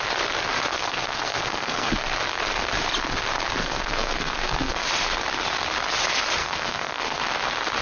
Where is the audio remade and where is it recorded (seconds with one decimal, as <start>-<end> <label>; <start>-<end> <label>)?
0.0-0.7 recorded; 0.7-1.9 remade; 1.9-3.6 recorded; 3.6-4.9 remade; 4.9-6.4 recorded; 6.4-7.2 remade; 7.2-7.8 recorded